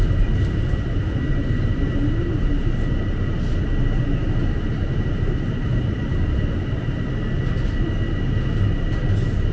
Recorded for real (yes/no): yes